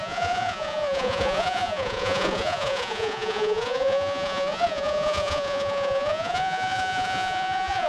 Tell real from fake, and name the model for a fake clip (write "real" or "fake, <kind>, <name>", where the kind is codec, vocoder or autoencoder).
fake, vocoder, Vocos